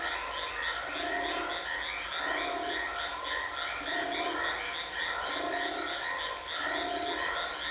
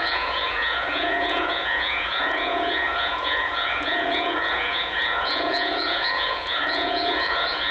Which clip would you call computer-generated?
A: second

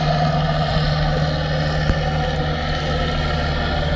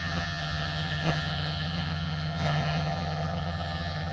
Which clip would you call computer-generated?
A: second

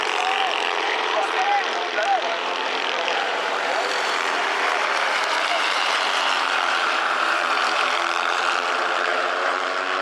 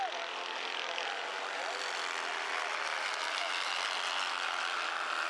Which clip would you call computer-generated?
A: first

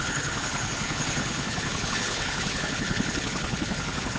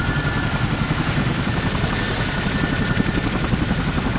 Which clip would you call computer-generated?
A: first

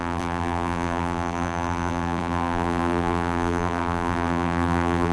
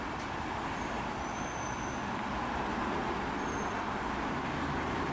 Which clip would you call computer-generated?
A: first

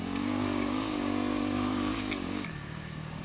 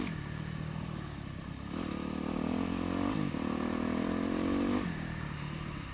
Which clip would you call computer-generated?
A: first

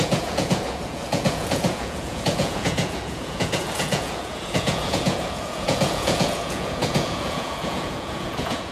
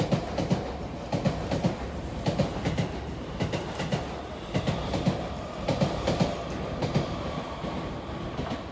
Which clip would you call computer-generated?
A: first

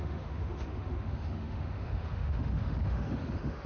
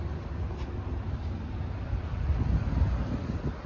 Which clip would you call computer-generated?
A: first